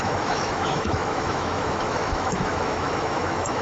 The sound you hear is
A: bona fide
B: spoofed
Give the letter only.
B